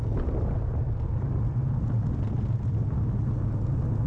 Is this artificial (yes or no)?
no